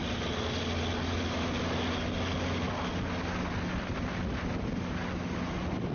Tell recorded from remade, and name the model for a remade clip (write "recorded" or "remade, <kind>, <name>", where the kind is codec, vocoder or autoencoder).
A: recorded